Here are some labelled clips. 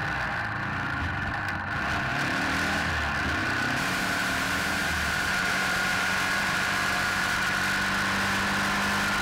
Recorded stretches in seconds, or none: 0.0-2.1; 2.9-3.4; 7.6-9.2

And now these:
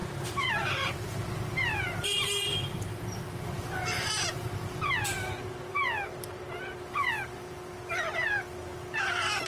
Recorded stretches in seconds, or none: 4.8-9.5

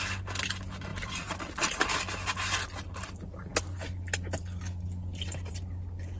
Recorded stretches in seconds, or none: 0.0-0.9; 1.8-6.2